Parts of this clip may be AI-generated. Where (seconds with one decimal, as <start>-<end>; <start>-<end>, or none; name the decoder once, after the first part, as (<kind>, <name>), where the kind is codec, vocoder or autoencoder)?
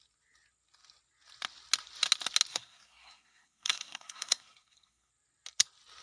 2.5-5.1 (codec, SNAC)